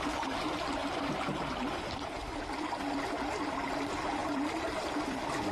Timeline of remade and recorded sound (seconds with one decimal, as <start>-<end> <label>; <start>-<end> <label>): 0.0-5.5 recorded